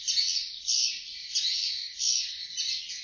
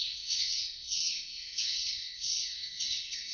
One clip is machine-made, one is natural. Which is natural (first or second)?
first